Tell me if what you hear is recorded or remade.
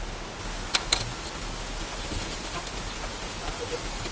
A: recorded